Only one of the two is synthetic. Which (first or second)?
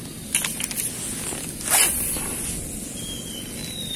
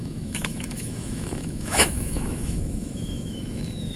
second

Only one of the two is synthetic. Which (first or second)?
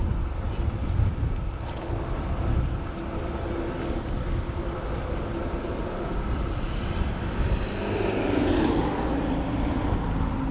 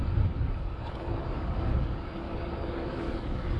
second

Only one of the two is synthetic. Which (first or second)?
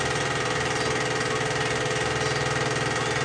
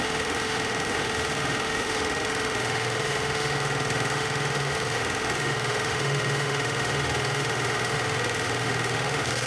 second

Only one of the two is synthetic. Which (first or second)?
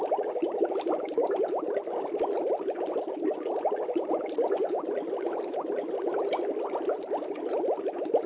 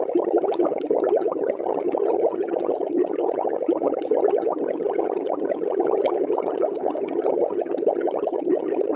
second